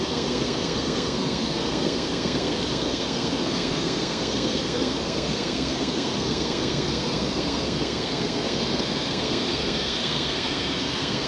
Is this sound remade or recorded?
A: remade